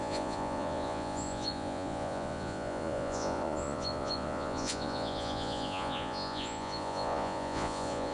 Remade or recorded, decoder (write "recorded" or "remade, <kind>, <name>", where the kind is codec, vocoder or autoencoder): remade, vocoder, Vocos